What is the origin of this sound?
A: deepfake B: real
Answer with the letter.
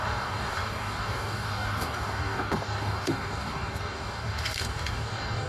A